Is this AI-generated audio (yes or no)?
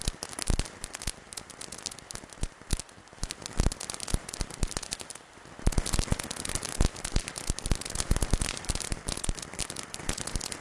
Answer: no